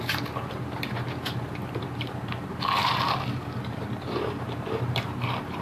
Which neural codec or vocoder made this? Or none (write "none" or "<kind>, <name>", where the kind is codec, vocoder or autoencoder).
vocoder, BigVGAN v2